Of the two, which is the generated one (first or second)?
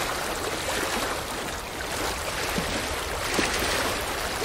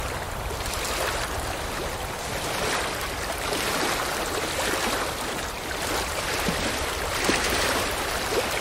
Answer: second